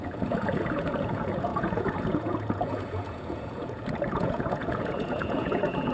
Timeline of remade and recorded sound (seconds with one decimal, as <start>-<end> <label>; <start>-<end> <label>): 0.0-5.9 remade